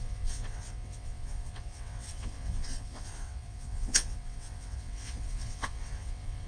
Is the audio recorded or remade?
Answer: remade